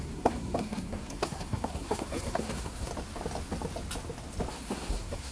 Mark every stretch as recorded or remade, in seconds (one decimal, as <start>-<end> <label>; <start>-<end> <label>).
0.0-2.9 remade; 2.9-4.5 recorded; 4.5-5.3 remade